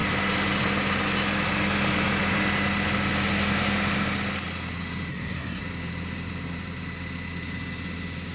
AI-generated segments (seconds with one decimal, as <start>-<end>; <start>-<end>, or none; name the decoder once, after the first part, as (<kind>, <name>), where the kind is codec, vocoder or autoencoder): 5.1-5.6 (codec, SNAC)